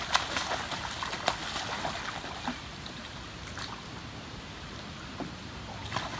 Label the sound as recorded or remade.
recorded